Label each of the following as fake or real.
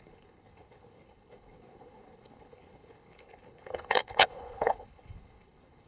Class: fake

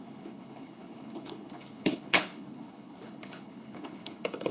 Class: fake